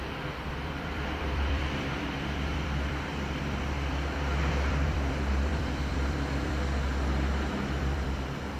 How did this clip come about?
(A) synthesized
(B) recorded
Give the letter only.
A